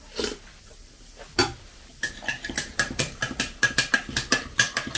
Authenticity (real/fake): fake